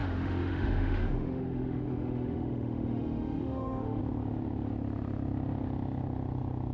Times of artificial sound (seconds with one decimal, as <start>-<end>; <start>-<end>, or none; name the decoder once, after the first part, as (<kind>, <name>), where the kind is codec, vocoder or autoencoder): 0.0-4.0 (autoencoder, DAC-VAE)